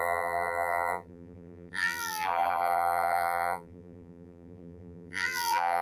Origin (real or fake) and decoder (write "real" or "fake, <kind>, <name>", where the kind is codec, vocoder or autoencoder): fake, vocoder, BigVGAN v2